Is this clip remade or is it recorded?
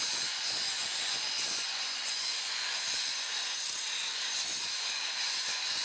remade